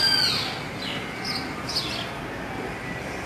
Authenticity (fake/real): real